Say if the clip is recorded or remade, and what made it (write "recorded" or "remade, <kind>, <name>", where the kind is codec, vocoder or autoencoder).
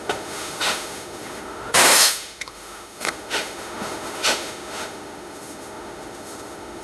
remade, autoencoder, DAC-VAE